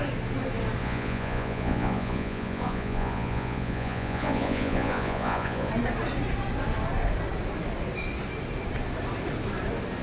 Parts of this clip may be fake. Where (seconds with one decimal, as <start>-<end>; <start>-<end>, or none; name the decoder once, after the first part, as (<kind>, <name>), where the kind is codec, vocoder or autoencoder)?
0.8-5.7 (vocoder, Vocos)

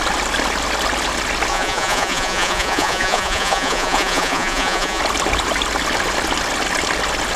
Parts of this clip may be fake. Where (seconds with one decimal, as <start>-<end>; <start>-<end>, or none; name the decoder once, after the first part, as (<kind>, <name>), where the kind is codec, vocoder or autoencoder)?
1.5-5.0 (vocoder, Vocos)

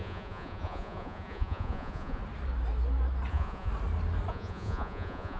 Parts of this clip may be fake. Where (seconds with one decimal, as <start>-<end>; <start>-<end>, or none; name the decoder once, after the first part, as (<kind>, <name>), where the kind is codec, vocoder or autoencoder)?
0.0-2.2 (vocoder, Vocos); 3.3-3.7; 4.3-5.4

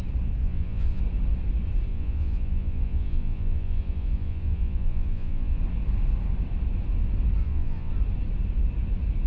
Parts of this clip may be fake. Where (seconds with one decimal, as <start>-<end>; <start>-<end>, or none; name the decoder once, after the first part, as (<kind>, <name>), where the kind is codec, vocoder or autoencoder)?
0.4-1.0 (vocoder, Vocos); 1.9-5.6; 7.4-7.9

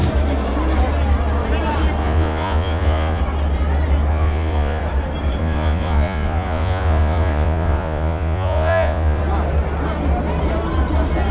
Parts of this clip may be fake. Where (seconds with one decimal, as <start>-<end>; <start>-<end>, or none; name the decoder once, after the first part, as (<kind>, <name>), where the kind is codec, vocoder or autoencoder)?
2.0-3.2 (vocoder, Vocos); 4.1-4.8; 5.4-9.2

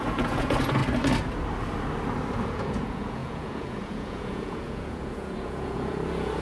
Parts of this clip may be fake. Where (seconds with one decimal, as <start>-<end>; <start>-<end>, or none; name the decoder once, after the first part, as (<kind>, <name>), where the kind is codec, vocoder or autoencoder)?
0.0-0.8 (vocoder, Vocos); 2.4-6.4

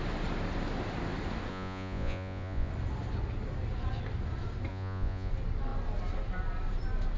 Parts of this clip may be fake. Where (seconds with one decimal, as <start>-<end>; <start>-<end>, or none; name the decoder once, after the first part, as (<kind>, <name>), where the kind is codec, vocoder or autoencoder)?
1.5-2.7 (vocoder, Vocos); 4.7-5.3